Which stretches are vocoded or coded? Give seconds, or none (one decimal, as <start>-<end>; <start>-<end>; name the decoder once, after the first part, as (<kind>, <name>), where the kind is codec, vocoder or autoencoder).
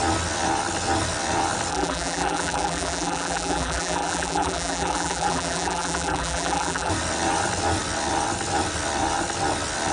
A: 1.7-6.9 (vocoder, BigVGAN v2)